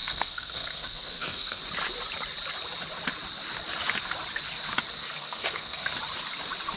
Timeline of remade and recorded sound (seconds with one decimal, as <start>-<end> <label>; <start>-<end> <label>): 0.0-1.6 remade; 1.6-5.2 recorded; 5.2-5.9 remade; 5.9-6.8 recorded